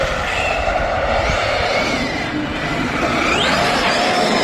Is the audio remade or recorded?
recorded